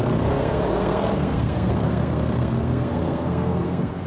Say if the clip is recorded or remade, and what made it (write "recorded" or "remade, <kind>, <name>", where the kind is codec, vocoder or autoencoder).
remade, codec, SNAC